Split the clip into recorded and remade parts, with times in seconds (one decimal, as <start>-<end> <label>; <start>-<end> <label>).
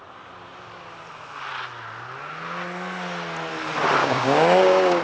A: 0.0-4.0 recorded; 4.0-5.0 remade